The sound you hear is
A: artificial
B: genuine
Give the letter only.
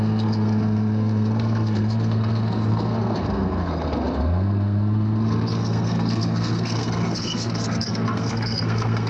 A